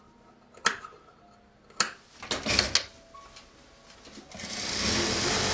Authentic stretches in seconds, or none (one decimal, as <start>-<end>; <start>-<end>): 0.0-5.5